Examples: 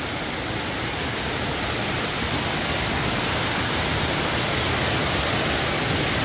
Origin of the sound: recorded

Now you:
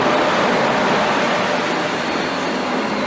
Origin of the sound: recorded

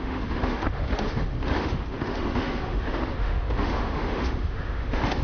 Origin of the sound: remade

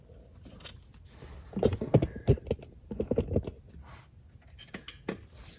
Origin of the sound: recorded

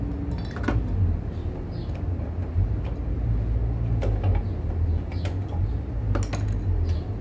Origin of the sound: recorded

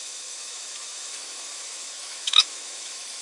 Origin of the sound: remade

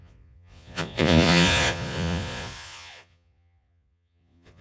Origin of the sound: remade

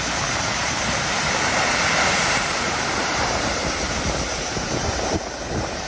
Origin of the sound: remade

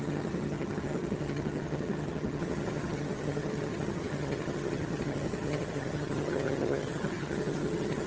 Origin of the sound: remade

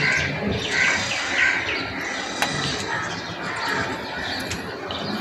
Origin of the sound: recorded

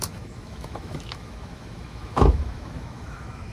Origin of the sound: remade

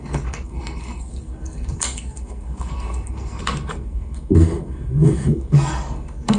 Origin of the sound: remade